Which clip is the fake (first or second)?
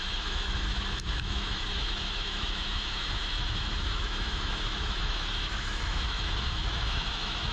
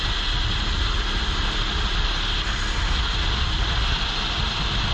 first